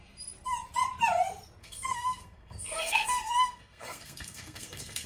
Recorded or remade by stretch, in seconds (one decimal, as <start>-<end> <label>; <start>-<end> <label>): 0.0-1.6 recorded; 1.6-5.1 remade